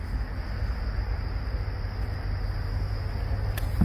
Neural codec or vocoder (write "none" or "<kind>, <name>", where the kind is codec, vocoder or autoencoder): none